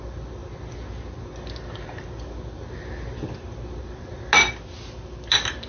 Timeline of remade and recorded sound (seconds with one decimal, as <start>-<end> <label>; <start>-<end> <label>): 0.0-5.7 recorded